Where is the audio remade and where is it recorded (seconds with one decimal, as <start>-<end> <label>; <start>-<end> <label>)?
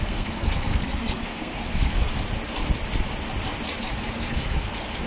0.0-2.1 remade; 2.1-4.2 recorded; 4.2-5.1 remade